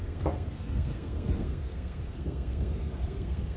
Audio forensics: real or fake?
fake